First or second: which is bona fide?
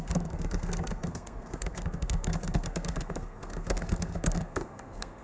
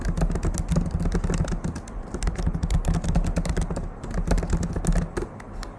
second